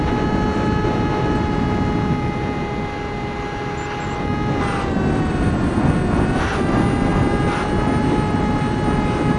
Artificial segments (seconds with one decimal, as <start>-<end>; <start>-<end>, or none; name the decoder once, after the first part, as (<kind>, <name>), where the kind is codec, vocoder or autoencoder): none